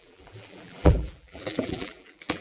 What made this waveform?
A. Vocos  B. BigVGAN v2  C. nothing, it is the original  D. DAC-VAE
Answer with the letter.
B